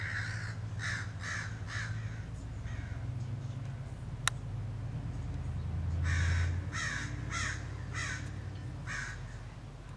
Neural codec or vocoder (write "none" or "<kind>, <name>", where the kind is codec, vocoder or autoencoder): none